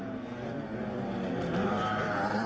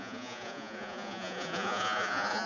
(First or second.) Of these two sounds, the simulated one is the second